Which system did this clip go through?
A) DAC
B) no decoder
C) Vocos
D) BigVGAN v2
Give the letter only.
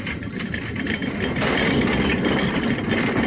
D